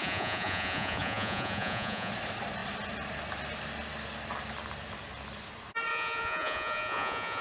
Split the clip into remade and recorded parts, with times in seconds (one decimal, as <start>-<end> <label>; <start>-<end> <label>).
0.0-2.1 remade; 2.1-5.9 recorded; 5.9-7.4 remade